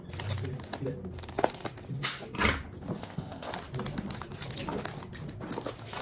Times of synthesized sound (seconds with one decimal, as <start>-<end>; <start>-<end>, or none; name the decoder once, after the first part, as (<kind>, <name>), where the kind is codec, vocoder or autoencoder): 3.0-3.5 (codec, ZipCodec)